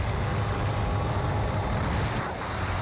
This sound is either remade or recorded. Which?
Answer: remade